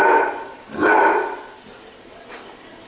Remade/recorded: recorded